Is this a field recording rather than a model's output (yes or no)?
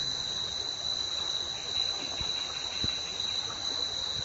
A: yes